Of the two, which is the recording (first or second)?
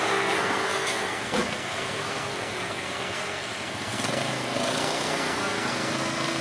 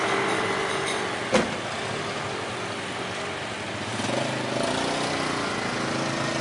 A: second